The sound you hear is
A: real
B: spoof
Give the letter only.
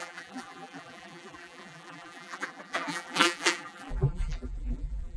B